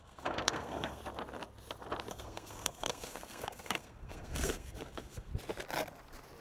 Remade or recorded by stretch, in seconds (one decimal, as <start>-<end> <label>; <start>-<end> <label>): 0.0-1.0 remade; 1.0-2.1 recorded; 2.1-5.3 remade; 5.3-6.4 recorded